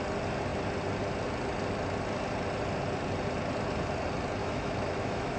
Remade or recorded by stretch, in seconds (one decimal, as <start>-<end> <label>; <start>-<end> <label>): 0.0-4.4 recorded; 4.4-5.4 remade